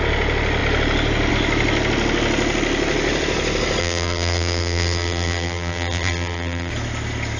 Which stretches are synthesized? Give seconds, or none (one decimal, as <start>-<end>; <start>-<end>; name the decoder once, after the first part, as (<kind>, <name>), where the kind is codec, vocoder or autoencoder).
3.8-6.7 (vocoder, BigVGAN v2)